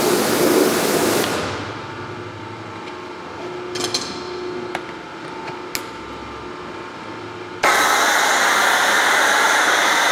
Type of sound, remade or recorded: recorded